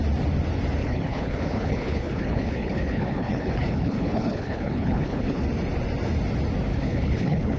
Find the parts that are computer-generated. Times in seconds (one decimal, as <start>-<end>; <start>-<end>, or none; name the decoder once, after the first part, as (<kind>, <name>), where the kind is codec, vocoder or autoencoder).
0.8-5.4 (codec, HILCodec); 6.7-7.6